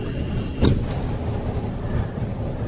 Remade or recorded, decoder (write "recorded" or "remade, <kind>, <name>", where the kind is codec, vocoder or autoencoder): recorded